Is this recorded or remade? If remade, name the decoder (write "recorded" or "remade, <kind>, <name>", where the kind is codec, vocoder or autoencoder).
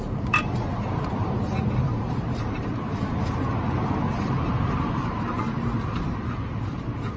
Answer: remade, vocoder, BigVGAN v2